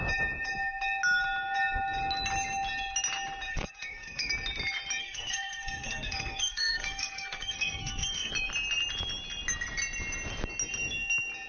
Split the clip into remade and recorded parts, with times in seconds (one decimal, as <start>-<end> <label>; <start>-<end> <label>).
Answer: 0.0-3.5 recorded; 3.5-4.3 remade; 4.3-5.0 recorded; 5.0-8.3 remade; 8.3-11.5 recorded